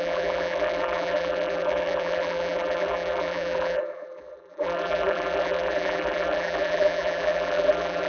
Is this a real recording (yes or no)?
no